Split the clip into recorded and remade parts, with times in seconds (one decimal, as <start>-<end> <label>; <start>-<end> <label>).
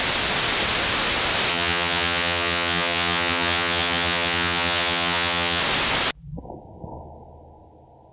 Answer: 0.0-1.5 recorded; 1.5-5.6 remade; 5.6-8.1 recorded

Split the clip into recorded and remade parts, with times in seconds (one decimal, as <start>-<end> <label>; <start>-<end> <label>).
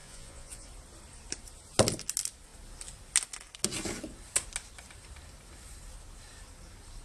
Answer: 0.0-0.7 remade; 0.7-7.0 recorded